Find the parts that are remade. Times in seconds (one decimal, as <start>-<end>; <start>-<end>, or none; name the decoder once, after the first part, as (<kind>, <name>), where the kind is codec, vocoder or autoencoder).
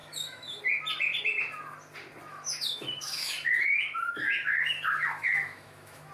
0.0-0.6 (autoencoder, DAC-VAE); 2.3-6.1